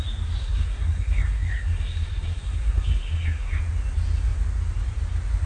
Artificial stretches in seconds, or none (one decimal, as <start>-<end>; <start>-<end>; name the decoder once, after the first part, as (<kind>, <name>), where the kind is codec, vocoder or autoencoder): 0.4-3.6 (codec, SNAC)